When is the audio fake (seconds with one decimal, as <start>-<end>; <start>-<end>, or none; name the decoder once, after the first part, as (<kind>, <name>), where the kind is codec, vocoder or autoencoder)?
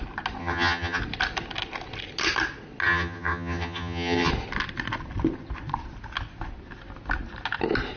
0.4-1.0 (vocoder, HiFi-GAN); 2.8-4.3